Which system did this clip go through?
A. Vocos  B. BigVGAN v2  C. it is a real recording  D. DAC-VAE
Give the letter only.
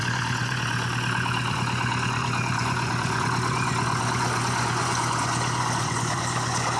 A